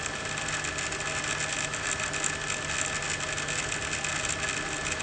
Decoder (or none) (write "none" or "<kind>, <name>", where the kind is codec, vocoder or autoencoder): none